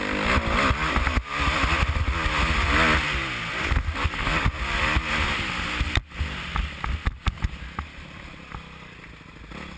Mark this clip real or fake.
real